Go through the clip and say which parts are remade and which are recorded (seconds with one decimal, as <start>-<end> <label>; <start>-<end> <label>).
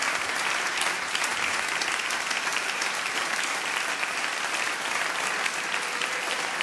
0.0-2.5 recorded; 2.5-4.7 remade; 4.7-6.6 recorded